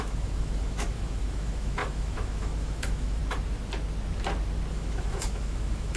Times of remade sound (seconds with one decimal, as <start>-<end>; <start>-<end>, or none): 0.0-3.2; 4.7-6.0